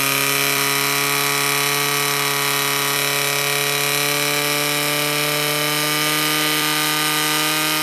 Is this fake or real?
real